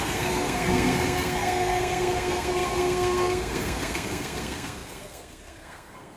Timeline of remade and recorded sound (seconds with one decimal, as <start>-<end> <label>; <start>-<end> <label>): 0.0-6.2 remade